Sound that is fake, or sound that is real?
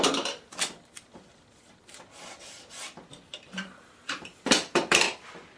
fake